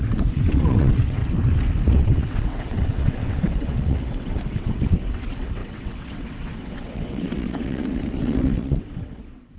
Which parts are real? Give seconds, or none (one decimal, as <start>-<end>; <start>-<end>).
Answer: 1.2-1.9